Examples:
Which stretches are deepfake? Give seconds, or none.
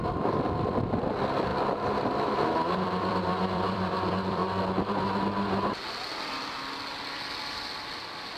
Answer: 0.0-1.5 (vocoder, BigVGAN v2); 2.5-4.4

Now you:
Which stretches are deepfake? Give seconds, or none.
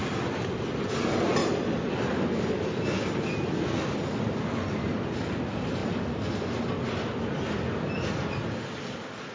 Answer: 1.4-2.4 (vocoder, BigVGAN v2)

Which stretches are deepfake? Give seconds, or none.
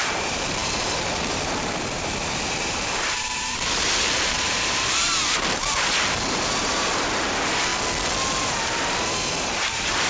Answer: 0.0-7.7 (vocoder, BigVGAN v2); 8.4-10.1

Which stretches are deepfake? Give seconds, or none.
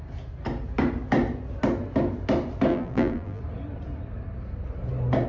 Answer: 2.7-3.4 (vocoder, BigVGAN v2)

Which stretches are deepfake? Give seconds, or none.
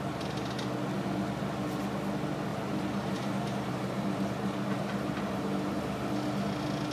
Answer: 2.5-5.8 (vocoder, BigVGAN v2)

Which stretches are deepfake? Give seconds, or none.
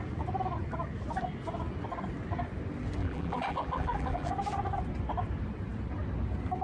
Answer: 3.0-4.3 (vocoder, BigVGAN v2)